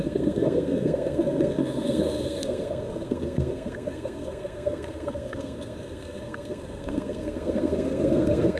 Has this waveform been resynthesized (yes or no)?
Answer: yes